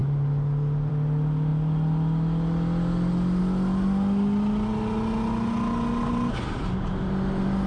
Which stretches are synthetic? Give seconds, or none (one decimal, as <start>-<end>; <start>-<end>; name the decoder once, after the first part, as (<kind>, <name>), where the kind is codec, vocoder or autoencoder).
none